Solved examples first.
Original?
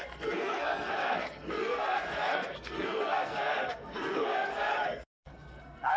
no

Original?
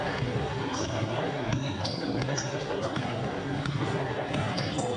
no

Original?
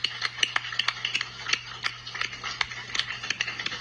yes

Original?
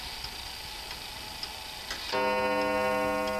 yes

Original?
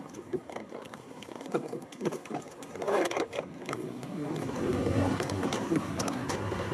no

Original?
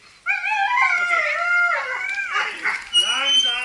yes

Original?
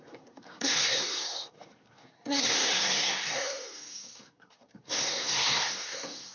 no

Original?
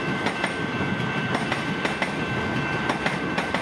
yes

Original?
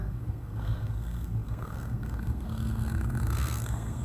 no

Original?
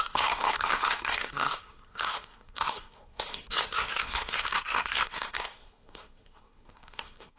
no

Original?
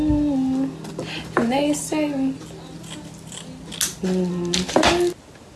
yes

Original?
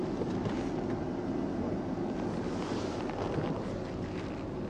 yes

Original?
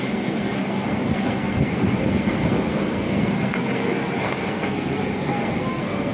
no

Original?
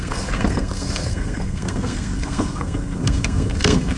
no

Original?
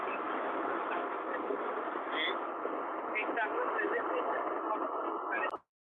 yes